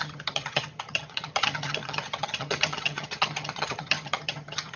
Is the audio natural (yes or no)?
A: no